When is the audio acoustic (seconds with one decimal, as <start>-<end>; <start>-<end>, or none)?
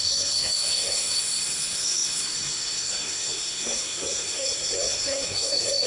none